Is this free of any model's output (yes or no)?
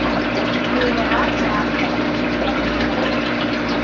no